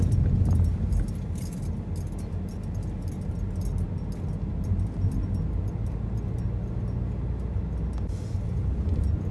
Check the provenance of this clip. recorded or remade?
recorded